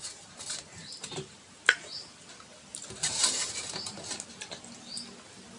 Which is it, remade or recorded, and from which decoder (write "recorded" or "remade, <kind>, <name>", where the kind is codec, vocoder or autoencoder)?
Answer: recorded